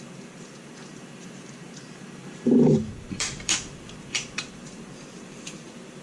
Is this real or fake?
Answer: fake